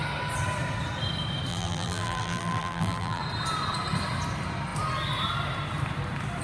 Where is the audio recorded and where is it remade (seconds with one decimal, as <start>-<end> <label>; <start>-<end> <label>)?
0.0-1.5 recorded; 1.5-3.2 remade; 3.2-6.4 recorded